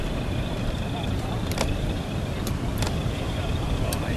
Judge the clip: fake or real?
fake